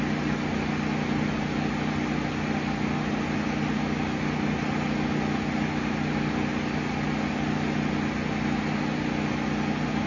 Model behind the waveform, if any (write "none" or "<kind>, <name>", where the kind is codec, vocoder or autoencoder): none